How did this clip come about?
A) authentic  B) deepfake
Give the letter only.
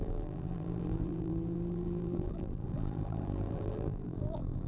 B